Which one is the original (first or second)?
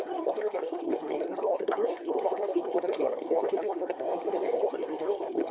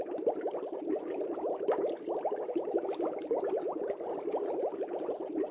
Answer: second